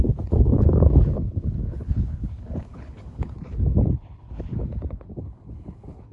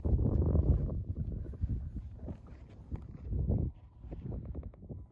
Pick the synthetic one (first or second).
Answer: first